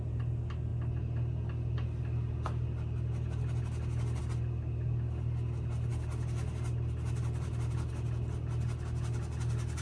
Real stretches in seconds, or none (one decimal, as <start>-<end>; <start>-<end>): 0.0-9.8